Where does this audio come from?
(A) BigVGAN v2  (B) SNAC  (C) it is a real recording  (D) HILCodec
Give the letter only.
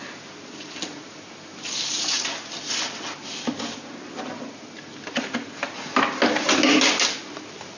C